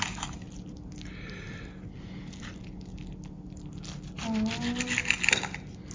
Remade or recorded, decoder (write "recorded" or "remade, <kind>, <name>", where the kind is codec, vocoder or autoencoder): recorded